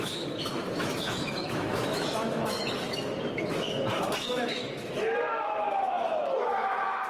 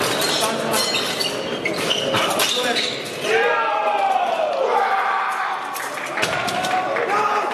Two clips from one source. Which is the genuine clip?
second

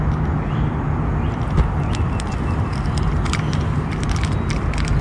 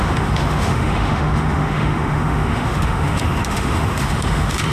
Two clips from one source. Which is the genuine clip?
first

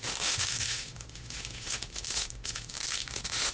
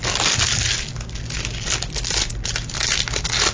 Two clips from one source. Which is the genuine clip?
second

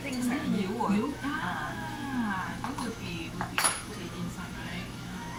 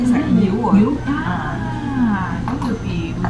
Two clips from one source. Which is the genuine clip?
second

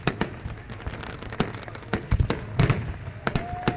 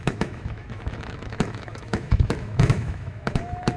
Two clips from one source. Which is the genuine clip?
first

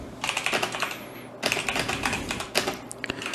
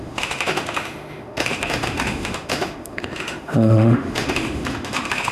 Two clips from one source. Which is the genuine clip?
first